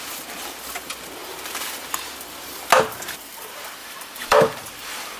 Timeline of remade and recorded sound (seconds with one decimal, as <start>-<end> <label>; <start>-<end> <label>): 0.0-3.8 recorded; 3.8-5.2 remade